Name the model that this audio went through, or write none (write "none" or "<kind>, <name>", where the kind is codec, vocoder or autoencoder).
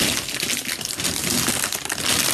none